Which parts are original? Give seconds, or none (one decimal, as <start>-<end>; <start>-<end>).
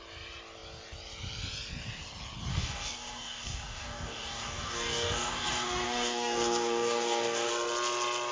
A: 0.0-2.5; 7.5-8.3